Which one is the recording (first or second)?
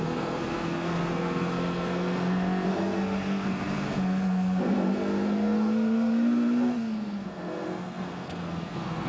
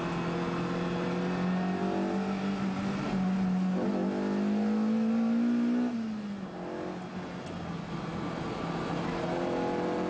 second